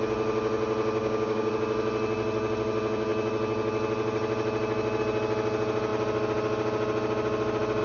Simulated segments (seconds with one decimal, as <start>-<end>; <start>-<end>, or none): 1.0-1.5

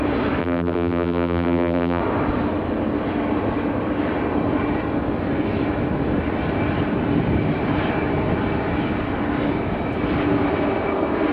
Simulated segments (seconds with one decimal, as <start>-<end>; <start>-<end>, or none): 0.4-2.0

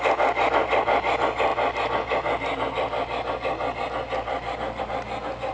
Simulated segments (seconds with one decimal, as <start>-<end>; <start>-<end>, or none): none

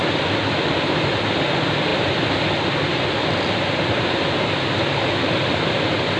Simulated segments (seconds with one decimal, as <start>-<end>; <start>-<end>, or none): none

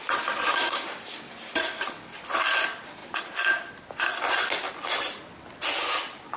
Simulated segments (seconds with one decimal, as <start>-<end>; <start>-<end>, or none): 0.5-1.3

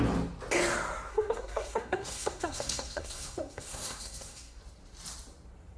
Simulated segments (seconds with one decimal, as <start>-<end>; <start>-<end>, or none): 1.1-4.6

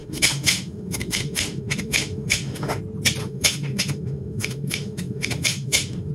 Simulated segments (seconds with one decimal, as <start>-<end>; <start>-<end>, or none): 0.0-2.8; 3.2-6.1